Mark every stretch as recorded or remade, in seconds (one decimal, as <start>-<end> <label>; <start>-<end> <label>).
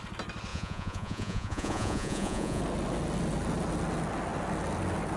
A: 0.0-0.5 recorded; 0.5-2.6 remade; 2.6-5.2 recorded